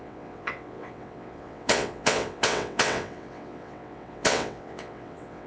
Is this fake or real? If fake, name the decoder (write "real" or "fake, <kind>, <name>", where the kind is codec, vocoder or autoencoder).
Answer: fake, vocoder, WaveNeXt